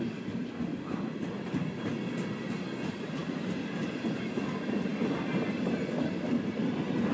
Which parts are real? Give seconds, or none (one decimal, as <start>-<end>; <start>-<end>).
0.0-7.1